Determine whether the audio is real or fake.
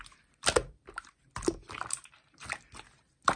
real